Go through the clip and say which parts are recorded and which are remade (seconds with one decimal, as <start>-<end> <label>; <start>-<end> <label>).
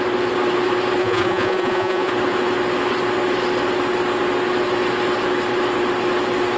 0.0-1.0 recorded; 1.0-2.1 remade; 2.1-6.6 recorded